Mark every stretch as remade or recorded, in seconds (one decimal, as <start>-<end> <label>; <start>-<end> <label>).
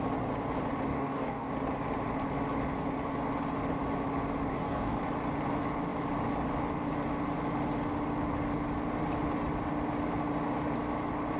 0.0-0.9 recorded; 0.9-1.5 remade; 1.5-4.5 recorded; 4.5-5.0 remade; 5.0-11.4 recorded